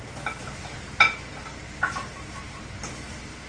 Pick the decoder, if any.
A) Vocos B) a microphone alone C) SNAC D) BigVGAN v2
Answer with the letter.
B